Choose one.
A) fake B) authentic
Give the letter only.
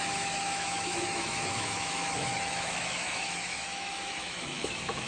A